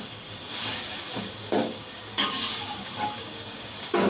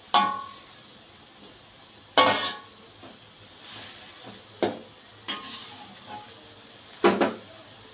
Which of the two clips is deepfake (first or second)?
first